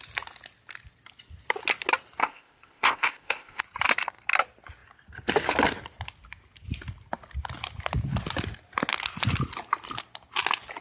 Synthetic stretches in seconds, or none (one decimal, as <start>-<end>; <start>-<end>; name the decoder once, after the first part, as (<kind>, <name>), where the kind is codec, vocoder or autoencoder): 2.2-3.6 (codec, ZipCodec)